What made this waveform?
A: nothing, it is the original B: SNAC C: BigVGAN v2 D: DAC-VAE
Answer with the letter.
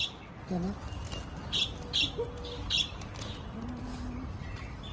A